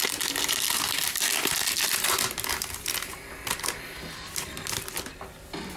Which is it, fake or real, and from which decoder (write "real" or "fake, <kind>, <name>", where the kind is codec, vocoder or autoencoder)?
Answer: real